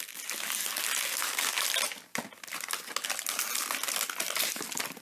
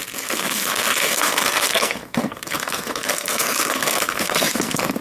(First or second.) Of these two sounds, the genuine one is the first